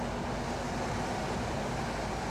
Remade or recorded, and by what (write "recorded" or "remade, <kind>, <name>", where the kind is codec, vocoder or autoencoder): recorded